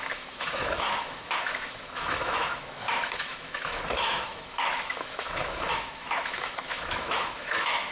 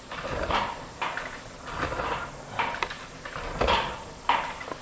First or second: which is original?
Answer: second